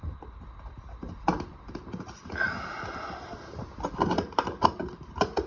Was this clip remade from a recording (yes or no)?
no